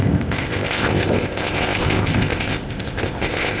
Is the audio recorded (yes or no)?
no